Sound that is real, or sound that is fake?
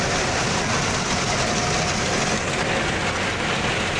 real